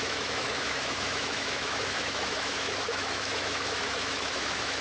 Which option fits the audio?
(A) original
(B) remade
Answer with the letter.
B